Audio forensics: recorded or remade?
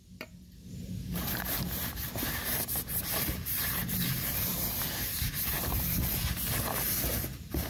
remade